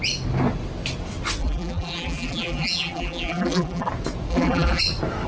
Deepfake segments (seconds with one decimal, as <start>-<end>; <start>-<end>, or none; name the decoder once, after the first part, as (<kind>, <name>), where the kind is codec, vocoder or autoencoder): 1.4-3.9 (vocoder, BigVGAN v2); 4.3-4.8